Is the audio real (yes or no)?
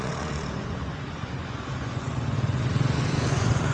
no